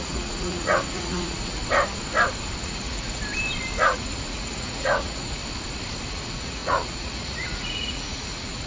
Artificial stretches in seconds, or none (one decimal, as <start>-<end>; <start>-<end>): 0.0-1.6; 2.6-3.2; 3.8-5.4; 6.1-8.7